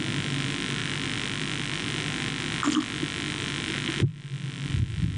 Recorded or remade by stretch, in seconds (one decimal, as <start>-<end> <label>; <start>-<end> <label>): 0.0-5.2 recorded